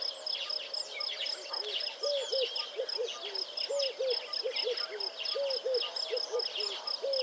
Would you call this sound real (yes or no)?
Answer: yes